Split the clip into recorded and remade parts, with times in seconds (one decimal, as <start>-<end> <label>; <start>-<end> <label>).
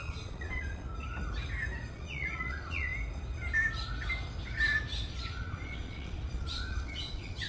0.0-0.9 remade; 0.9-1.9 recorded; 1.9-2.9 remade; 2.9-5.1 recorded; 5.1-7.5 remade